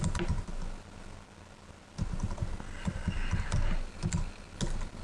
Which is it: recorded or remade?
recorded